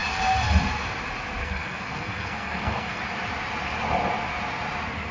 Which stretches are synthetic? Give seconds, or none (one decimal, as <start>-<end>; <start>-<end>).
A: 1.4-3.0